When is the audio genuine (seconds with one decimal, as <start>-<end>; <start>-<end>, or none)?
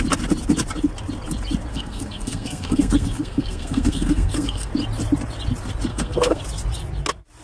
0.0-1.7; 4.7-5.9; 6.4-7.4